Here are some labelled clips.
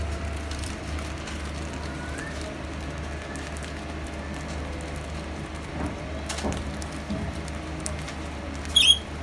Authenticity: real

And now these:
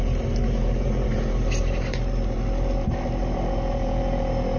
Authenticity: fake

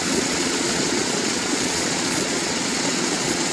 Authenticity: fake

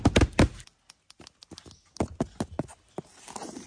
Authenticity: real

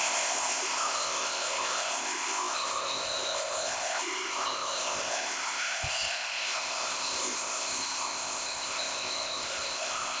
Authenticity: fake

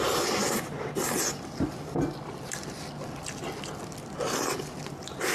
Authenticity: real